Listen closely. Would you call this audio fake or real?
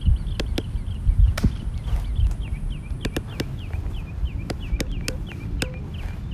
real